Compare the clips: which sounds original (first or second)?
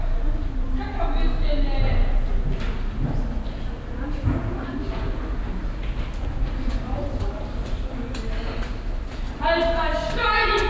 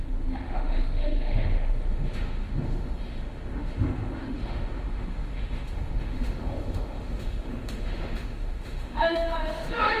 first